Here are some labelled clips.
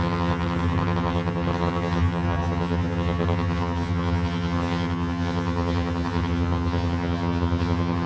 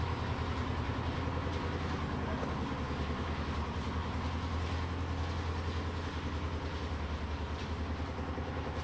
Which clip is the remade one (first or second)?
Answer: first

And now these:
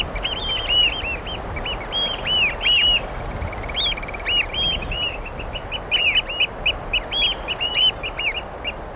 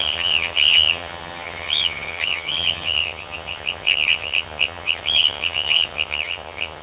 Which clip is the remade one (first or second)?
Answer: second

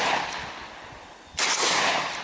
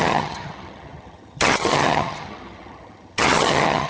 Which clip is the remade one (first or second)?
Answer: second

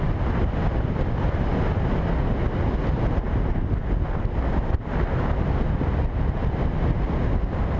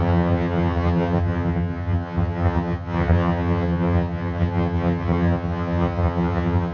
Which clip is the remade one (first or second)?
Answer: second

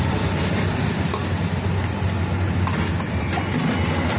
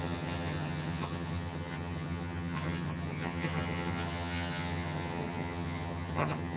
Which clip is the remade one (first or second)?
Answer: second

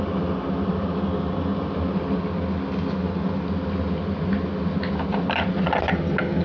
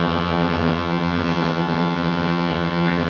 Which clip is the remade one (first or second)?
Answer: second